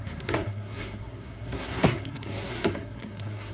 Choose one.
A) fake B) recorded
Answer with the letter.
A